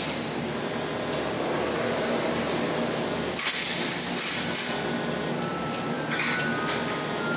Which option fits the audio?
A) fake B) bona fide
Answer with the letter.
B